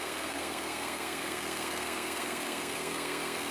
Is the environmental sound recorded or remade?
remade